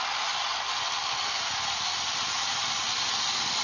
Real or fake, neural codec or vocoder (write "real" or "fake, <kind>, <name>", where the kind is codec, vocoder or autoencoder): real